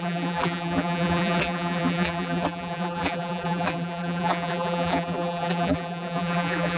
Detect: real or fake fake